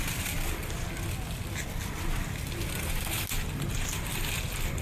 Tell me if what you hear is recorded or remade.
recorded